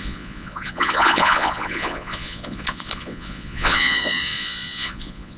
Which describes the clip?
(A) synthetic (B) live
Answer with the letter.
A